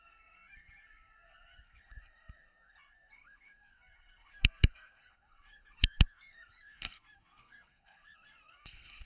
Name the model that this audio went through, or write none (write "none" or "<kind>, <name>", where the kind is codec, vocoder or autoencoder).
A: codec, SNAC